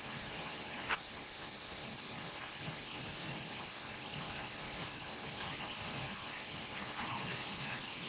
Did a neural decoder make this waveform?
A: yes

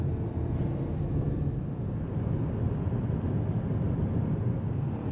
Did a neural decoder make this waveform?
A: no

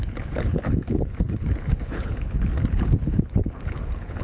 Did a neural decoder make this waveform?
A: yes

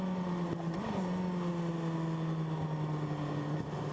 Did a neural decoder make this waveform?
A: no